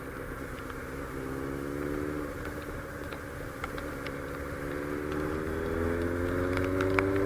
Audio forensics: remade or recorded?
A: recorded